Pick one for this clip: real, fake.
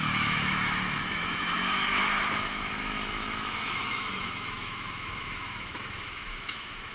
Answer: fake